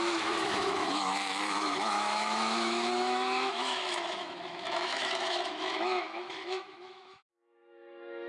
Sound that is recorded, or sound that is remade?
remade